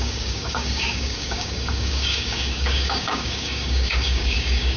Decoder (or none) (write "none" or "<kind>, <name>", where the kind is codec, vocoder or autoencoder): codec, DAC